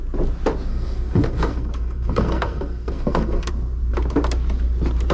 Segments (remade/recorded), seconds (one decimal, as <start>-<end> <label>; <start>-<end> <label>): 0.0-0.7 recorded; 0.7-3.5 remade; 3.5-5.1 recorded